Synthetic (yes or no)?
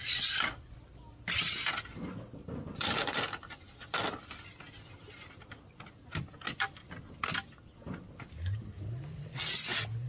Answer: no